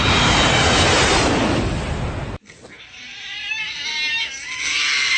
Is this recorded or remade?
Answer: recorded